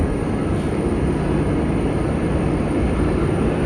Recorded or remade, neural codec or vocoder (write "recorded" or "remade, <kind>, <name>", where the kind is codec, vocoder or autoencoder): remade, vocoder, BigVGAN v2